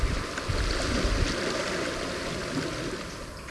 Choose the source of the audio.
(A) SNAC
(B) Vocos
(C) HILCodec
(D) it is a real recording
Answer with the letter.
D